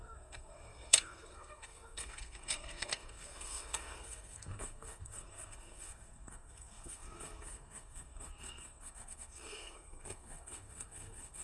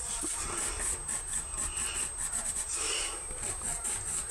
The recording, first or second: second